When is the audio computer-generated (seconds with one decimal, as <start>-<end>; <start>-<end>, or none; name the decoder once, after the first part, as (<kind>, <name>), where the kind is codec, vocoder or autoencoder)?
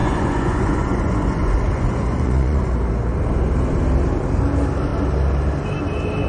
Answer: 0.0-2.7 (vocoder, Vocos)